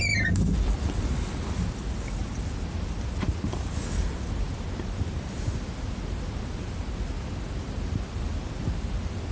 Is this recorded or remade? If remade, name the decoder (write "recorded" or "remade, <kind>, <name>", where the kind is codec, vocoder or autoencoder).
recorded